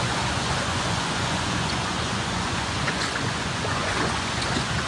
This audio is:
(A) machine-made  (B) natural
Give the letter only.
A